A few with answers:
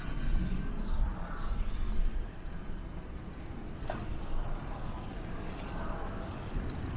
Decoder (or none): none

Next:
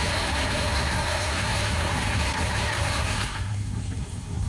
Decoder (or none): codec, SNAC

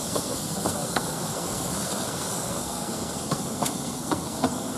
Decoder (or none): codec, SNAC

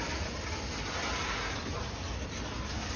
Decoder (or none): none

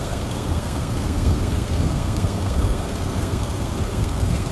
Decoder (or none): codec, SNAC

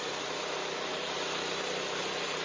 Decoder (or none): none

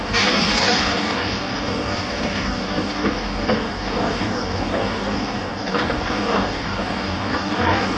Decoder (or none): codec, DAC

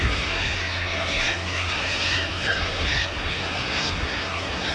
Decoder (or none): codec, SNAC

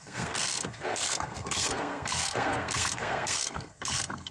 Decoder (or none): codec, SNAC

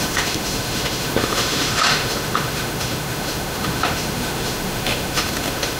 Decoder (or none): autoencoder, DAC-VAE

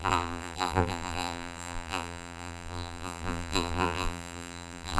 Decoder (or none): vocoder, BigVGAN v2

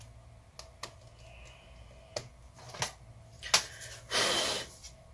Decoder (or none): none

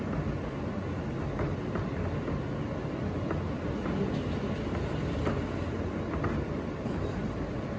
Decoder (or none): none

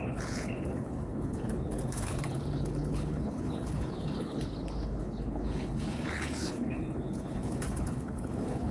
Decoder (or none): codec, HILCodec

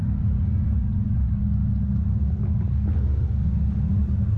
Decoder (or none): none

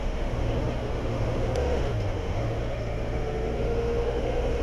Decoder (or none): autoencoder, DAC-VAE